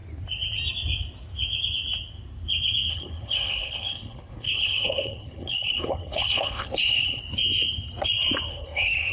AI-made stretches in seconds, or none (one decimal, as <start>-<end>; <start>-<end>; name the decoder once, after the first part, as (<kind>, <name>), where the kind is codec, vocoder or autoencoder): 2.9-7.2 (codec, HILCodec); 8.5-9.1